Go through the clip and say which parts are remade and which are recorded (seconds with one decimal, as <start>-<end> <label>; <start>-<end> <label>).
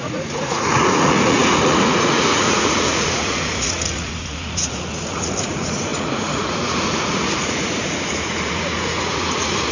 0.0-9.7 remade